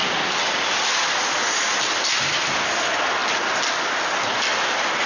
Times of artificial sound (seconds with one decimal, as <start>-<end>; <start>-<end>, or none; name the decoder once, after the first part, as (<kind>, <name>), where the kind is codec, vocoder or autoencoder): none